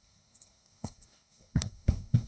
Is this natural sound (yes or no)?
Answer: no